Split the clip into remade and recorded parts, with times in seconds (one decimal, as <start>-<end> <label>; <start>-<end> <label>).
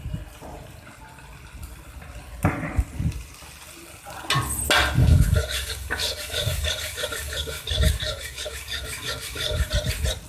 0.0-5.0 recorded; 5.0-9.7 remade; 9.7-10.3 recorded